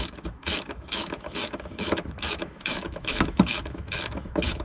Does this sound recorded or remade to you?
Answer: remade